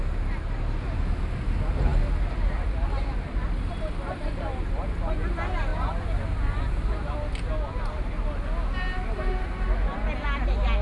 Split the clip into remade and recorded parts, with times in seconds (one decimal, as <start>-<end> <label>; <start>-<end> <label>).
0.0-10.8 recorded